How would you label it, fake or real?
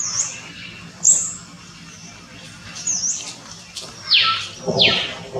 real